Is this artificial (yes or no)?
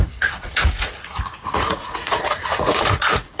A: yes